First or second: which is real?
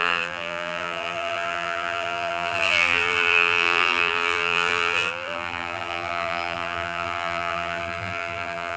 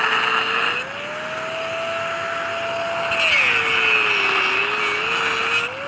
second